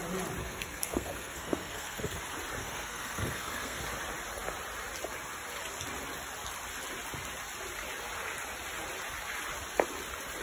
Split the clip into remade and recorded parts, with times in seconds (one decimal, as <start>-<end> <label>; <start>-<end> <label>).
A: 0.0-0.4 recorded; 0.4-2.2 remade; 2.2-2.6 recorded; 2.6-3.8 remade; 3.8-10.4 recorded

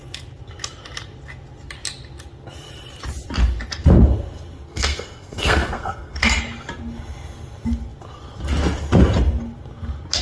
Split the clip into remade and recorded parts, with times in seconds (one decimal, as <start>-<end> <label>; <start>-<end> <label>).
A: 0.0-4.7 recorded; 4.7-6.4 remade; 6.4-10.2 recorded

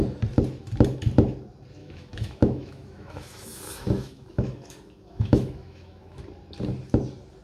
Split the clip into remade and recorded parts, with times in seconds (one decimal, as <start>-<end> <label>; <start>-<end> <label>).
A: 0.0-1.8 recorded; 1.8-6.2 remade; 6.2-7.4 recorded

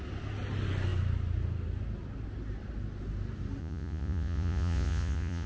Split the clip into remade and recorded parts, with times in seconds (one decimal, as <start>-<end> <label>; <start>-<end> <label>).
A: 0.0-3.6 recorded; 3.6-5.5 remade

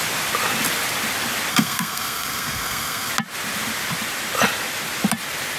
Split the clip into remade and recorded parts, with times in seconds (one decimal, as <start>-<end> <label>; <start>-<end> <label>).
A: 0.0-1.5 recorded; 1.5-3.1 remade; 3.1-5.6 recorded

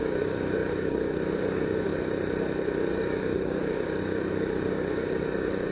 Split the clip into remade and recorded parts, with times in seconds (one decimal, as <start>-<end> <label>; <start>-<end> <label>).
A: 0.0-1.9 remade; 1.9-2.9 recorded; 2.9-5.7 remade

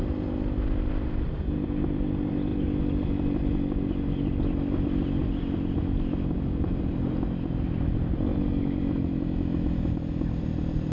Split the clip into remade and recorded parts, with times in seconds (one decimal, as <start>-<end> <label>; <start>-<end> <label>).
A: 0.0-10.9 recorded